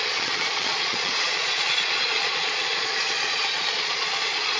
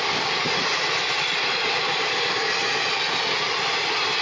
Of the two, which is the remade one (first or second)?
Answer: first